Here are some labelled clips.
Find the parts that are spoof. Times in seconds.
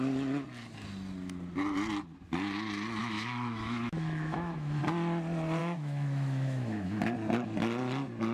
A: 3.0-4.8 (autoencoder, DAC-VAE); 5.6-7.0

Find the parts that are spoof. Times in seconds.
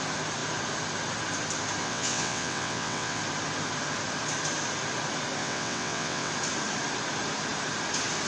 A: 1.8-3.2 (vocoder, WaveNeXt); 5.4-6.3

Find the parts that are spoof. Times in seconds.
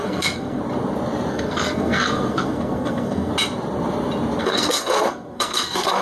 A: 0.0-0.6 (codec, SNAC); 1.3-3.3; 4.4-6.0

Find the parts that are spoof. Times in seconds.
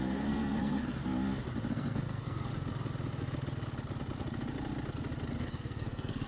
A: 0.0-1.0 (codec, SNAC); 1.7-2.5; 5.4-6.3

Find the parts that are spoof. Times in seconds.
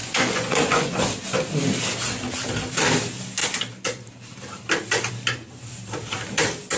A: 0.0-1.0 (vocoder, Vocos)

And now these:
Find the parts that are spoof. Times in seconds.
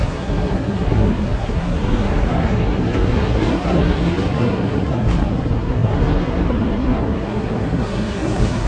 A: 0.0-8.7 (codec, SNAC)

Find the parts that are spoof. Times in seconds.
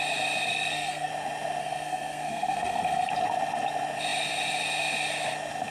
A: 0.5-1.1 (codec, SNAC); 1.6-3.1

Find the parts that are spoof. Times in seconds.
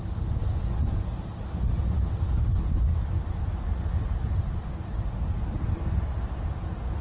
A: none